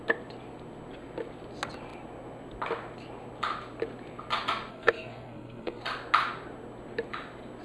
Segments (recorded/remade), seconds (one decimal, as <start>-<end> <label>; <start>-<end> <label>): 0.0-4.7 recorded; 4.7-5.8 remade; 5.8-7.6 recorded